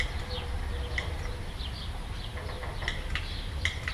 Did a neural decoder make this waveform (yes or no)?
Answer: no